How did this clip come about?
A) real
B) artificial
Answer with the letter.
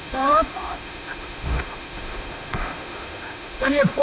B